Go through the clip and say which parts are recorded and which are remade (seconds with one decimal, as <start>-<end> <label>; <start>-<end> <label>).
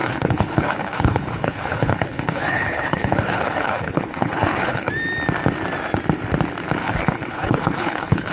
0.0-4.9 remade; 4.9-6.8 recorded; 6.8-8.3 remade